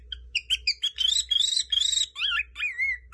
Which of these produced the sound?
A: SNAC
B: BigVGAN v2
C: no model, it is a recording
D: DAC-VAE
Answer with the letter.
C